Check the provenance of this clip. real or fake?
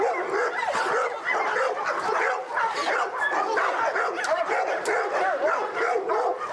real